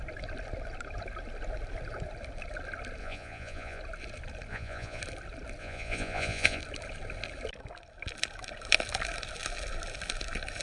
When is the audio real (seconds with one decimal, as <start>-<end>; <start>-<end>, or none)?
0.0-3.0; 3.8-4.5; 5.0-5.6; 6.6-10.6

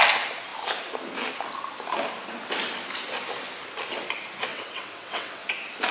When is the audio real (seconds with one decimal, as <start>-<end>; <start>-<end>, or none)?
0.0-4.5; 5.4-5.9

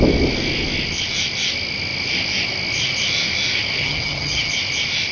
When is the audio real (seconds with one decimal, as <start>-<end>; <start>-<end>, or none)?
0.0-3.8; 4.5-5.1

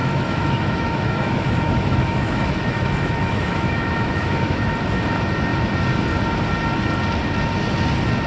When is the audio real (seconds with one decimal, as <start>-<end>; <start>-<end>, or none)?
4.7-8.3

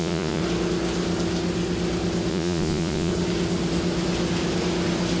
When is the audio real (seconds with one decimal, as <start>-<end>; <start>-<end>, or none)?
0.4-2.3; 3.1-5.2

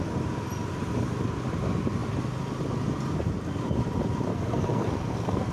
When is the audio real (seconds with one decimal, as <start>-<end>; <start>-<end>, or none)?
0.0-4.3